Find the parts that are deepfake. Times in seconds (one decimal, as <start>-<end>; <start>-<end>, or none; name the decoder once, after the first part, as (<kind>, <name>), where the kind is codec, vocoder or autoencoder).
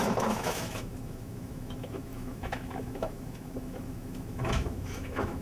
0.0-5.4 (autoencoder, DAC-VAE)